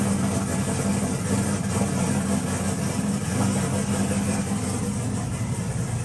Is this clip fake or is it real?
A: real